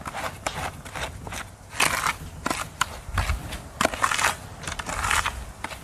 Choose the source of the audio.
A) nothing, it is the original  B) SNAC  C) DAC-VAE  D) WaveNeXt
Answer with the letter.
A